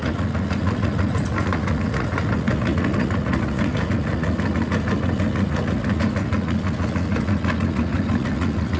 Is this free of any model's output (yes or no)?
no